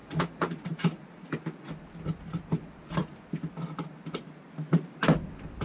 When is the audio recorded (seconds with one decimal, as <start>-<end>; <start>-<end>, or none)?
1.7-5.6